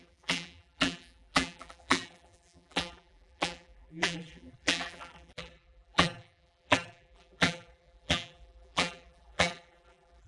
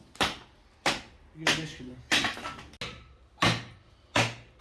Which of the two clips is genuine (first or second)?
second